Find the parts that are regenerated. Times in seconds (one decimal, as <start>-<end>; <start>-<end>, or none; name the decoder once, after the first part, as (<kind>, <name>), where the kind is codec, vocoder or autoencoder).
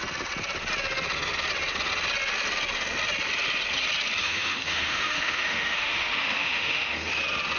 4.2-7.1 (autoencoder, DAC-VAE)